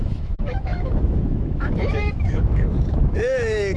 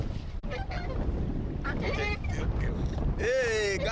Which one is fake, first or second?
first